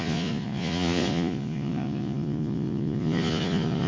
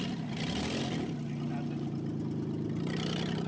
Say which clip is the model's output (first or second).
first